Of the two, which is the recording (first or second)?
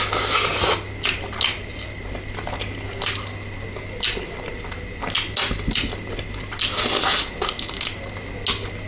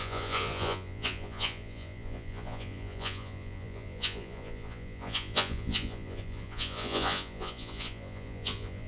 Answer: first